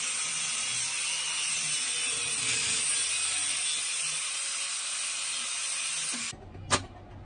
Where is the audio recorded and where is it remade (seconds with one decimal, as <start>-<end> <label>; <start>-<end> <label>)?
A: 0.0-7.2 recorded